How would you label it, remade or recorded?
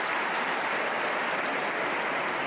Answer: recorded